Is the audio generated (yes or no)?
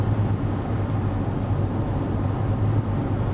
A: no